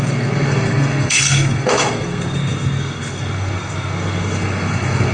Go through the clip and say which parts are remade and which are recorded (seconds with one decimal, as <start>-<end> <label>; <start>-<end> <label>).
0.0-5.1 remade